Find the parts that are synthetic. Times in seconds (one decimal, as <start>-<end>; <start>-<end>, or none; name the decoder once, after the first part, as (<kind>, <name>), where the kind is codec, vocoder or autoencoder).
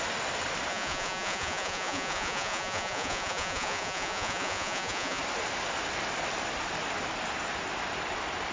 0.7-5.2 (vocoder, Vocos)